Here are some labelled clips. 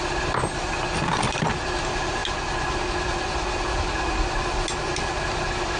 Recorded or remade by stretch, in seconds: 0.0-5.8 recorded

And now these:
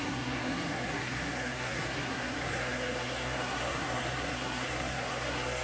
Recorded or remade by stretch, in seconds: 0.0-5.6 remade

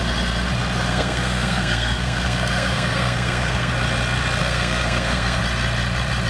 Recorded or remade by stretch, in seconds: 0.0-0.9 recorded; 0.9-3.7 remade; 3.7-4.4 recorded; 4.4-5.4 remade; 5.4-6.3 recorded

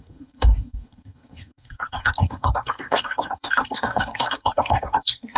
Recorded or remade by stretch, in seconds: 0.0-5.4 remade